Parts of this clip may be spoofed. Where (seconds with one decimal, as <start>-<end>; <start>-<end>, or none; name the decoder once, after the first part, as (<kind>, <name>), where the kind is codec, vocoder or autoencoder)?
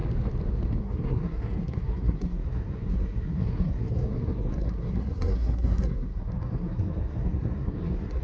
0.8-8.2 (codec, SNAC)